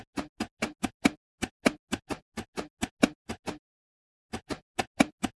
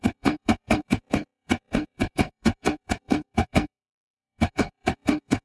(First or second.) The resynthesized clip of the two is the second